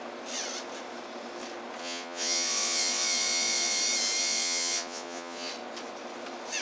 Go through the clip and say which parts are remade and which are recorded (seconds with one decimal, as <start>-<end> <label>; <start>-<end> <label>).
0.0-1.8 recorded; 1.8-3.8 remade; 3.8-4.2 recorded; 4.2-5.5 remade; 5.5-6.6 recorded